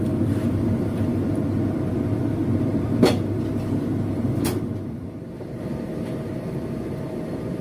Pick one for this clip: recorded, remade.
remade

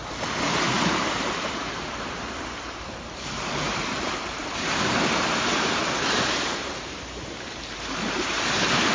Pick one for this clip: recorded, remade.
remade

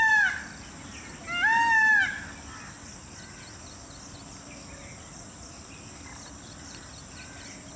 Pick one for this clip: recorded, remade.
recorded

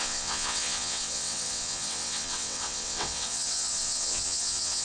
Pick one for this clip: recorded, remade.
remade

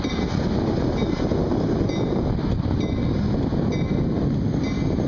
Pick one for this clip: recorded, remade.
recorded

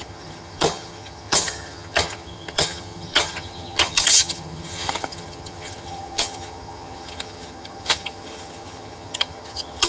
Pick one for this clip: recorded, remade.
remade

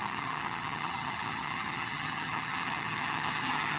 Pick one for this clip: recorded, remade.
remade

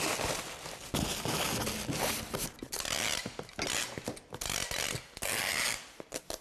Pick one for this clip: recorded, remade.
recorded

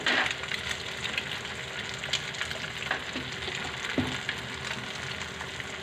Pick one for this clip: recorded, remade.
recorded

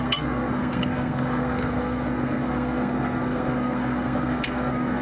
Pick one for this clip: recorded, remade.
remade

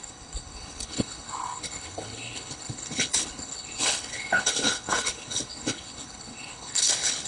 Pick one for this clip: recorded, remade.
remade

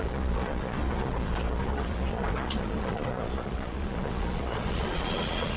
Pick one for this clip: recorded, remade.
remade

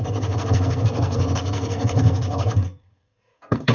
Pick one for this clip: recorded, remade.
remade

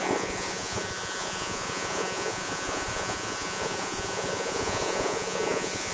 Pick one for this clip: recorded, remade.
remade